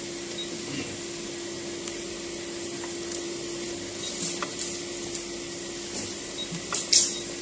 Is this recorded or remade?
remade